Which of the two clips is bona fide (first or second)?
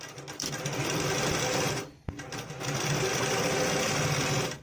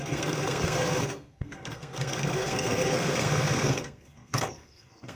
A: first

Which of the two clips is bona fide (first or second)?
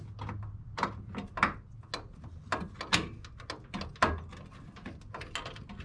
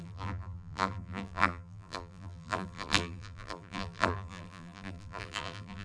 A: first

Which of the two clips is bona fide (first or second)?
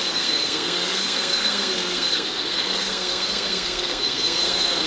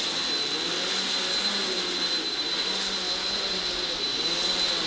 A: second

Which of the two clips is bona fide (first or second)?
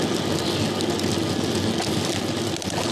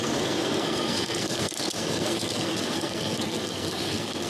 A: first